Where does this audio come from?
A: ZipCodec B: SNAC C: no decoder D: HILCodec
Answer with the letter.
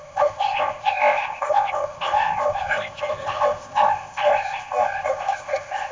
A